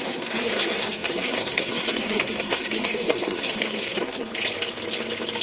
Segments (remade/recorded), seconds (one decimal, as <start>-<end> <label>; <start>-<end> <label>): 0.0-4.3 remade; 4.3-5.4 recorded